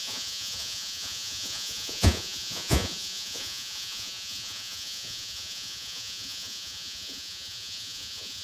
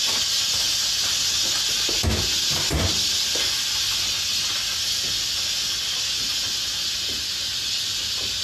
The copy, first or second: first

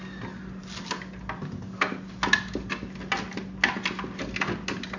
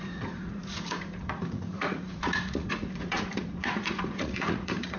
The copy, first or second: second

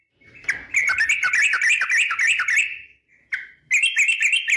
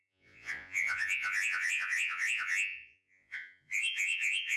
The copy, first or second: second